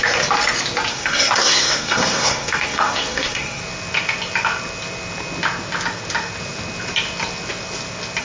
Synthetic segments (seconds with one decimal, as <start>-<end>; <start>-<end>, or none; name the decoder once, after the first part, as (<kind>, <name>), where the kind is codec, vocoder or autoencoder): 0.9-3.6 (codec, SNAC)